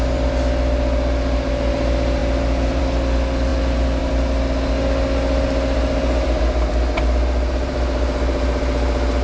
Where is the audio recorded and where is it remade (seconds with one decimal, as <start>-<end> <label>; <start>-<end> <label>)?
0.0-9.2 recorded